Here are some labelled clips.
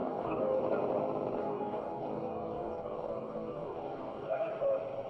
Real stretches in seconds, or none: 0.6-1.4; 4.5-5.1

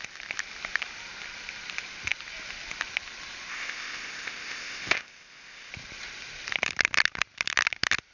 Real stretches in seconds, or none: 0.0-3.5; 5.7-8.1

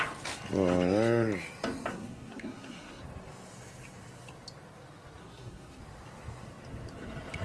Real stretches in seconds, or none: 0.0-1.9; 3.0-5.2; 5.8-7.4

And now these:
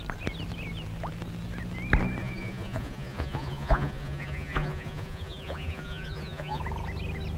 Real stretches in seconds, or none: 0.0-2.2; 6.6-7.4

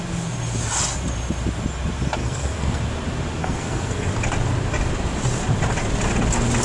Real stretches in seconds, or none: 0.0-2.2; 2.8-3.4; 4.1-6.6

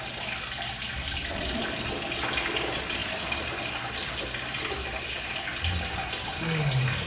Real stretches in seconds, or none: 0.0-7.1

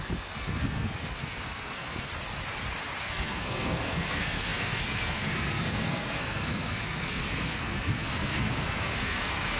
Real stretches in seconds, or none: 2.1-3.0